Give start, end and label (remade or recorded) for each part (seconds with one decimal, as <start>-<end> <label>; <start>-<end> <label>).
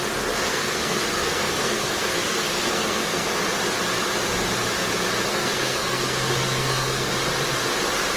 0.0-0.5 recorded; 0.5-3.3 remade; 3.3-5.3 recorded; 5.3-7.1 remade; 7.1-8.2 recorded